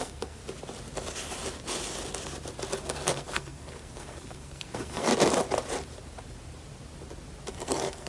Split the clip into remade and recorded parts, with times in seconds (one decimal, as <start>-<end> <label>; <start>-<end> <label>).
0.0-0.4 remade; 0.4-2.8 recorded; 2.8-5.1 remade; 5.1-7.5 recorded; 7.5-8.1 remade